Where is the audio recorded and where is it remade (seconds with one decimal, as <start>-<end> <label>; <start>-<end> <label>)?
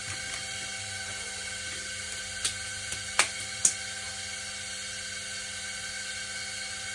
0.0-6.9 recorded